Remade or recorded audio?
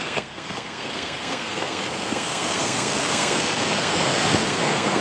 remade